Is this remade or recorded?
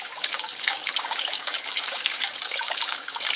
remade